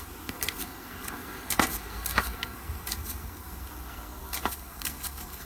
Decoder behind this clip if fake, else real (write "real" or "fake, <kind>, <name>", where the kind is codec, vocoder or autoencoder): fake, codec, SNAC